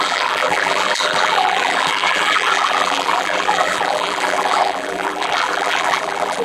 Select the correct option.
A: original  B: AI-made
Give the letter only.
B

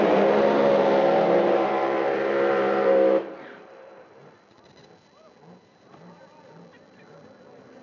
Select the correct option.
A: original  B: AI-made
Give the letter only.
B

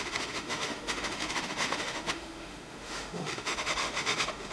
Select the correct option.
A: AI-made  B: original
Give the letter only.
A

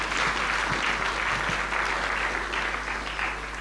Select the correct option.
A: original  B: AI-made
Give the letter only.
A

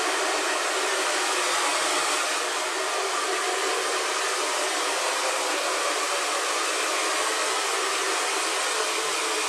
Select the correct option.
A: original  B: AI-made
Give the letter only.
A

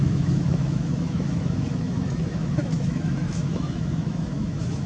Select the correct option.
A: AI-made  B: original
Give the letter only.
A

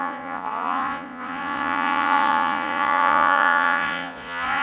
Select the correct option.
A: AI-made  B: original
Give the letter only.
A